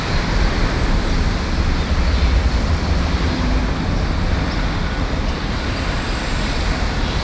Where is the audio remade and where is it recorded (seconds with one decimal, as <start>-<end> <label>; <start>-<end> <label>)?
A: 0.0-3.6 remade; 3.6-5.3 recorded; 5.3-7.2 remade